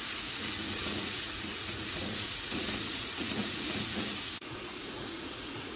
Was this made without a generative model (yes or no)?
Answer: no